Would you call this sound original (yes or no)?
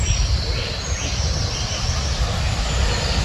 yes